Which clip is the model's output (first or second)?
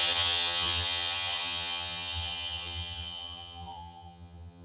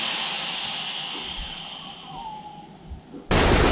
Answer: first